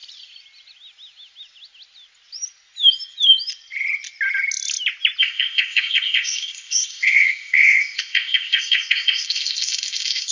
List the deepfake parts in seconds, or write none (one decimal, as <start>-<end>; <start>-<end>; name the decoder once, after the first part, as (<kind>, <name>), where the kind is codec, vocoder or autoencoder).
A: 5.2-10.3 (codec, ZipCodec)